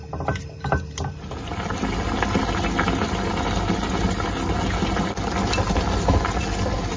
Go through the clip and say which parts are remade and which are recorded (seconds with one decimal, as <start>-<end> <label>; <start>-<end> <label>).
0.0-7.0 recorded